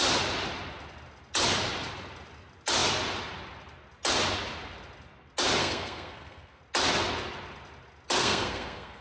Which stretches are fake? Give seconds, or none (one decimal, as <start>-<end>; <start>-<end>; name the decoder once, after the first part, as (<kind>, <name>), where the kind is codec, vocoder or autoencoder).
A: 5.6-6.6 (codec, SNAC); 8.2-9.0